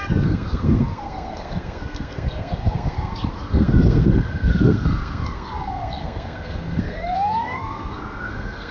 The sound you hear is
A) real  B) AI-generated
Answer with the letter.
B